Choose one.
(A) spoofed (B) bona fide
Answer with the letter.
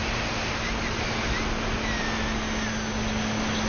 B